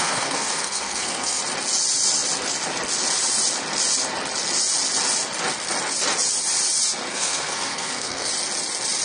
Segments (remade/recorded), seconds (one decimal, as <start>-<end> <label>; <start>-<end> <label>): 0.0-1.4 remade; 1.4-7.1 recorded; 7.1-8.3 remade; 8.3-9.0 recorded